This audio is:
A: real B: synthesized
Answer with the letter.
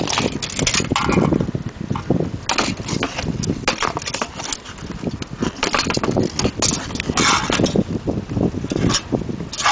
A